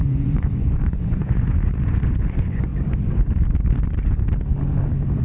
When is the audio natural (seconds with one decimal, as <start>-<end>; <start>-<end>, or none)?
2.7-5.2